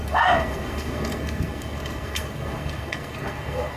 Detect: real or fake fake